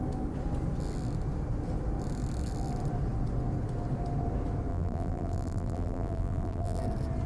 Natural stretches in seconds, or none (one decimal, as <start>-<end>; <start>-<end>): 0.0-4.7; 6.8-7.3